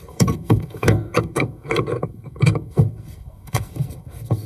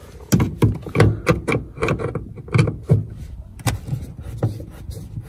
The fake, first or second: first